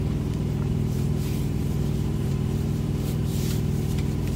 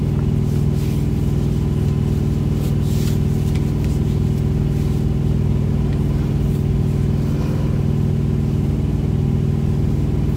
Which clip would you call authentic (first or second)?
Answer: second